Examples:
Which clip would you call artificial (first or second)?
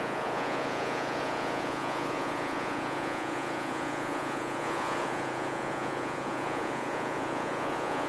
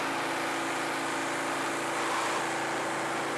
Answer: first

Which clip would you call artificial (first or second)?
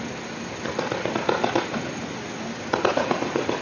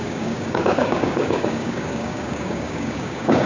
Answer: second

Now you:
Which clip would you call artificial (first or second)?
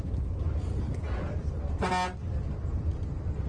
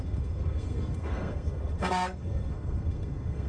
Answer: second